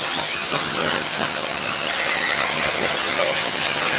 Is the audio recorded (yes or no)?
no